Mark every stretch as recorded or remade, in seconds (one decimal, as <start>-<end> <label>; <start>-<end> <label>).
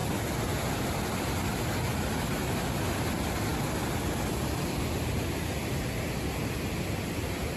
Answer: 0.0-3.5 recorded; 3.5-5.7 remade; 5.7-7.6 recorded